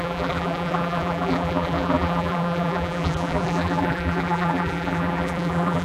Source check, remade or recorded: remade